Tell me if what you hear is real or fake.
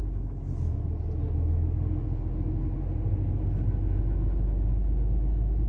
real